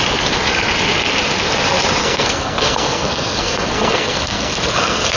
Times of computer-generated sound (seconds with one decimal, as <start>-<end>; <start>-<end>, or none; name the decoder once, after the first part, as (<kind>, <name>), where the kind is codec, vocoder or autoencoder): 2.0-5.2 (codec, SNAC)

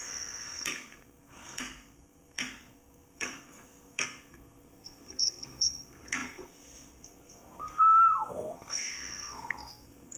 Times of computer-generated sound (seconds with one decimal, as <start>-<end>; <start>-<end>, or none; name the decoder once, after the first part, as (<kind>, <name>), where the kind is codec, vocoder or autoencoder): 0.0-10.2 (codec, SNAC)

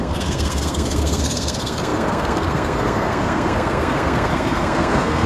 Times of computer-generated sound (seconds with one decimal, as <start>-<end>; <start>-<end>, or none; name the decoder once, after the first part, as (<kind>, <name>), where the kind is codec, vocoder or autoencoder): 0.0-5.3 (codec, SNAC)

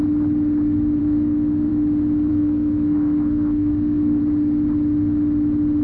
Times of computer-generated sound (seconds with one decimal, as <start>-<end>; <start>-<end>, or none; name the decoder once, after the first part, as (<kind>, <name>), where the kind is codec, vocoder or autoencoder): 1.0-1.7 (codec, SNAC); 2.3-4.2

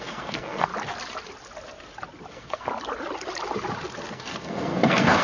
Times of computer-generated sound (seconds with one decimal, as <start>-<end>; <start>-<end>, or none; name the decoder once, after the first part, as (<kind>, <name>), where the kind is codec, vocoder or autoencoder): 0.0-0.7 (codec, SNAC); 2.3-2.7; 4.1-5.2

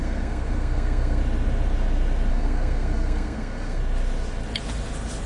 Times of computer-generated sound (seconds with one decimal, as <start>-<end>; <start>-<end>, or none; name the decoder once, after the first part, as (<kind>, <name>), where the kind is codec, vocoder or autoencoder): 0.0-1.2 (codec, SNAC); 2.3-3.8